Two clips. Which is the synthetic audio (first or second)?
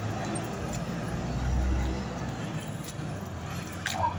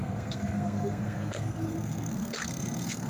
second